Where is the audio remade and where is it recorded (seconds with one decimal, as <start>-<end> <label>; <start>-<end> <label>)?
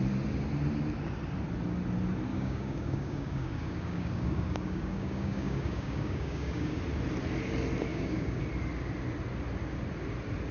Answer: 0.0-2.3 recorded; 2.3-6.8 remade; 6.8-7.9 recorded; 7.9-8.4 remade; 8.4-10.5 recorded